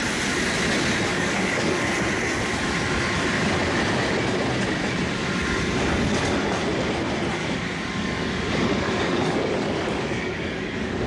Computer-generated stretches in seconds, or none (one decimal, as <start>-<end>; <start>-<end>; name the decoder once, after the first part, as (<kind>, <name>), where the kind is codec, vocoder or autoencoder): 1.1-1.8 (codec, DAC); 7.4-11.1